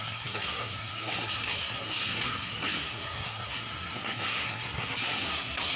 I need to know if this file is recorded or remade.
remade